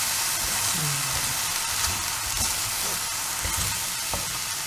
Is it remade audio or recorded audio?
recorded